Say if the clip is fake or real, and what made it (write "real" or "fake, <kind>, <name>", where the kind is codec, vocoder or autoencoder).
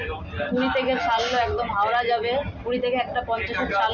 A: real